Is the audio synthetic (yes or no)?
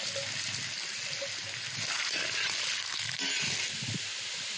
no